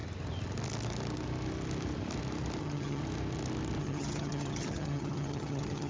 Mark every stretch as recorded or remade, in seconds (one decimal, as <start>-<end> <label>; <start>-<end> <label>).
0.0-2.6 recorded; 2.6-3.0 remade; 3.0-3.8 recorded; 3.8-5.9 remade